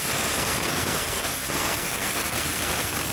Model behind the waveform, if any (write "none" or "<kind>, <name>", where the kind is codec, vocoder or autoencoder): codec, SNAC